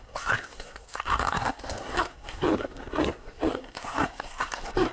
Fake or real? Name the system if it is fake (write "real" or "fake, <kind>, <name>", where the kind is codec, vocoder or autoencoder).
fake, codec, SNAC